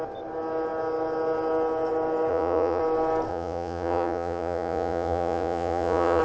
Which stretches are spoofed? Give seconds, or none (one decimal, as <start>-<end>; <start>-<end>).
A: 2.3-2.8; 3.3-6.2

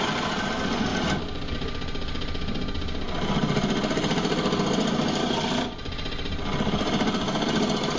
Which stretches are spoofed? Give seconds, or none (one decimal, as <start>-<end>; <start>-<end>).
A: none

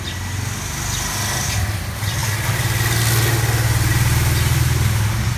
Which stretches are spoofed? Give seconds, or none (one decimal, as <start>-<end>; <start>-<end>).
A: none